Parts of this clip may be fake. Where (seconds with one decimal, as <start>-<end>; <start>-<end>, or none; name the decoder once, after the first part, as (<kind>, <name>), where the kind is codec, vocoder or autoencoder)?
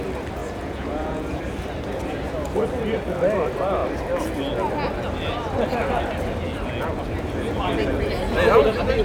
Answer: 0.4-1.4 (vocoder, Vocos)